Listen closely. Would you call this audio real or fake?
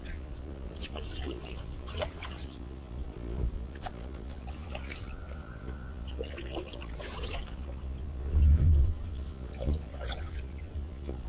fake